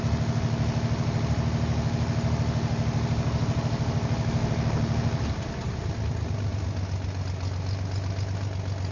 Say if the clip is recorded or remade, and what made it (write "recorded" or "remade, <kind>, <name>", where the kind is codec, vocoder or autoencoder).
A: recorded